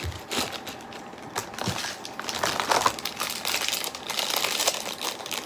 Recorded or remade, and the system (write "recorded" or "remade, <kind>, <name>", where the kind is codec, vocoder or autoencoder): recorded